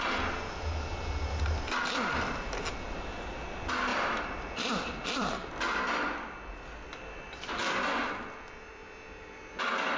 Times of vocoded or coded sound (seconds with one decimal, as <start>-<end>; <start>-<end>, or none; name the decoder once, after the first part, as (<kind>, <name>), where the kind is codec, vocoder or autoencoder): 3.9-5.5 (vocoder, BigVGAN v2); 6.9-7.6